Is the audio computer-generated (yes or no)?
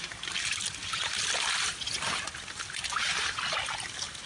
no